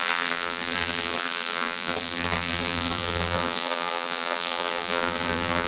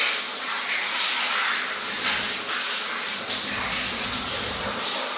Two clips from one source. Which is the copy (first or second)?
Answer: first